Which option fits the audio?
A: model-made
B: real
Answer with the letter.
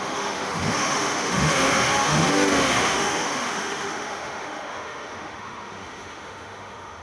A